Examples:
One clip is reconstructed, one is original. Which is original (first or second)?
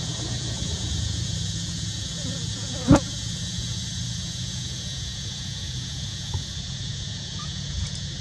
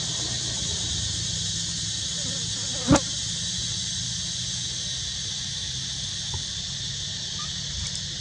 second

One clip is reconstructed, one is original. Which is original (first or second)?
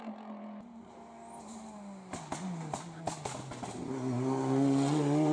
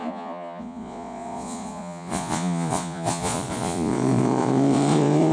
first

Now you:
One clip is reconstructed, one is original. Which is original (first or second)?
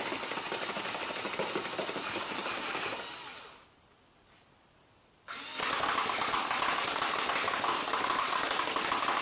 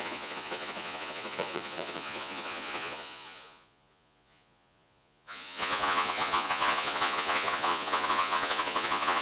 first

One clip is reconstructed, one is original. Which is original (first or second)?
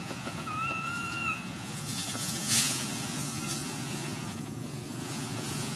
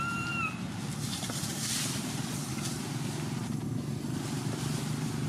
second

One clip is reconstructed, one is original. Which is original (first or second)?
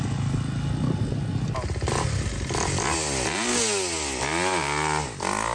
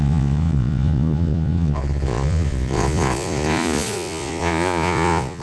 first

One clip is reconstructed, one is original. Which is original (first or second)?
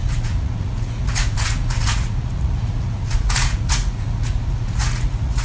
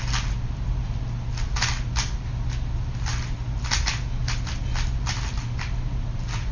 second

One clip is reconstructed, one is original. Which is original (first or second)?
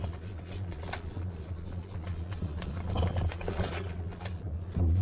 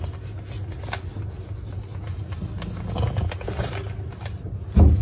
second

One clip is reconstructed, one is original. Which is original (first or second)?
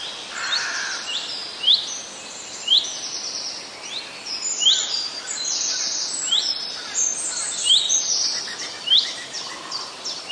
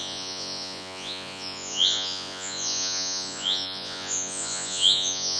first